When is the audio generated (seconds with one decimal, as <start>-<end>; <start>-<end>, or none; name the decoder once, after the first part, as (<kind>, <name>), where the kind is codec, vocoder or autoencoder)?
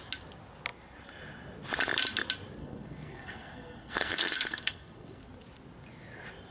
2.6-5.2 (codec, SNAC)